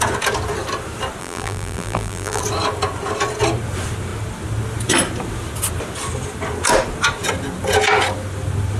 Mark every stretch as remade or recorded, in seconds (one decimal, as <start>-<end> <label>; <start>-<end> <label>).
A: 0.0-1.2 recorded; 1.2-2.4 remade; 2.4-8.8 recorded